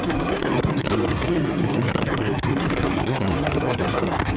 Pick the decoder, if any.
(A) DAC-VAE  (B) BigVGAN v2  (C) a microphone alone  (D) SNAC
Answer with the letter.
D